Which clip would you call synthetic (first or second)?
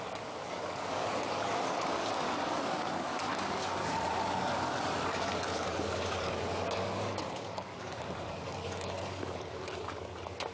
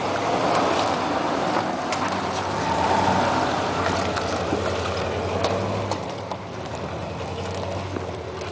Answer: first